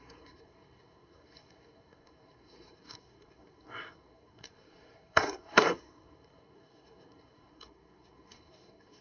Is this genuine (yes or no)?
no